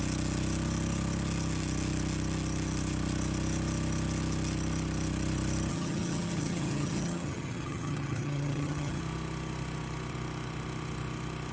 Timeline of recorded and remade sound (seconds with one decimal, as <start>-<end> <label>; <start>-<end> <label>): 0.0-5.7 recorded; 5.7-9.0 remade; 9.0-11.5 recorded